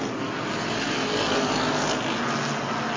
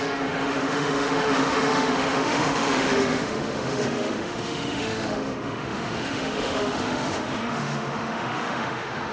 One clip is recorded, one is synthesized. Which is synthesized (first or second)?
second